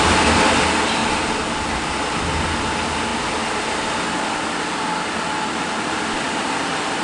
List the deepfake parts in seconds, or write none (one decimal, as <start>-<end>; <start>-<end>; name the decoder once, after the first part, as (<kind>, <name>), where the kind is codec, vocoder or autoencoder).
none